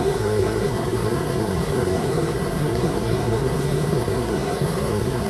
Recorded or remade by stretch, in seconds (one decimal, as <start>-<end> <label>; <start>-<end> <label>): 0.0-5.3 remade